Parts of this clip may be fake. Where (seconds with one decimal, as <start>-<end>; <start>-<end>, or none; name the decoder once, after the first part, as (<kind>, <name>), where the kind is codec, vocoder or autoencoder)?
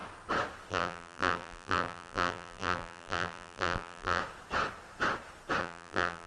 0.7-4.2 (vocoder, BigVGAN v2); 5.6-6.3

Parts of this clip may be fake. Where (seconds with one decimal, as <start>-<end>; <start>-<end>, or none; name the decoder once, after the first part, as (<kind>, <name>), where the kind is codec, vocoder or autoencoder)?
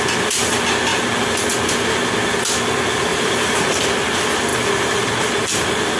3.1-3.8 (vocoder, BigVGAN v2)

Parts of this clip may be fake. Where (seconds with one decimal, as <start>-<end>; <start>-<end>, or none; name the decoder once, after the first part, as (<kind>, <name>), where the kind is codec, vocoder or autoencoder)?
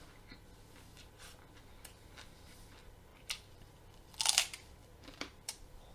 3.1-3.8 (vocoder, BigVGAN v2); 4.8-5.9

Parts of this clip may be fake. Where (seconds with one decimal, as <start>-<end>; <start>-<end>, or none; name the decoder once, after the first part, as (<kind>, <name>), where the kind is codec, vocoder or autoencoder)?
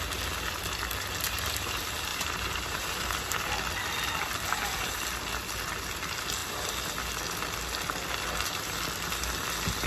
2.1-3.5 (vocoder, BigVGAN v2)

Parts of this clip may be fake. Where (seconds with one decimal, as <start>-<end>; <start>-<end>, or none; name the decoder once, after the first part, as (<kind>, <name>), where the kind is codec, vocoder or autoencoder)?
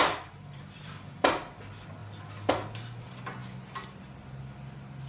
0.0-1.3 (vocoder, BigVGAN v2)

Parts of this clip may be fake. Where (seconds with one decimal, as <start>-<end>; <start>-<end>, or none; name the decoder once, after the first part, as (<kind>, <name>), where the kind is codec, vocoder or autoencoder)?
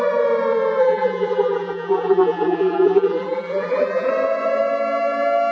0.8-4.1 (vocoder, BigVGAN v2)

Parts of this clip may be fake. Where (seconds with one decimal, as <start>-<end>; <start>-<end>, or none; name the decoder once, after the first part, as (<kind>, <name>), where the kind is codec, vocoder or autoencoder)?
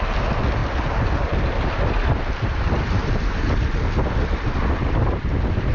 0.6-3.4 (vocoder, BigVGAN v2)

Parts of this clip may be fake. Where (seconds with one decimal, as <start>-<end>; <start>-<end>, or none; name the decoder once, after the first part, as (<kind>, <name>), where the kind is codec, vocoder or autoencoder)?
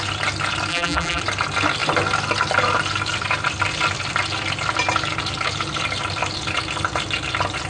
0.7-1.2 (vocoder, BigVGAN v2)